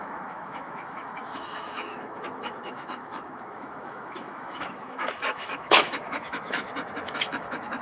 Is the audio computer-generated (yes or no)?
yes